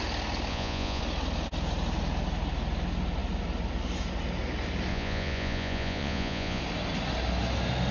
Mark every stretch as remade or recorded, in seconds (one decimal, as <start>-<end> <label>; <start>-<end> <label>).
0.0-0.5 recorded; 0.5-1.0 remade; 1.0-4.9 recorded; 4.9-6.6 remade; 6.6-7.9 recorded